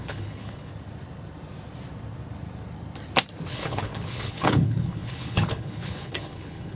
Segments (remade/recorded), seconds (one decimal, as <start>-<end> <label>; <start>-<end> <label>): 0.0-0.7 remade; 0.7-3.5 recorded; 3.5-6.8 remade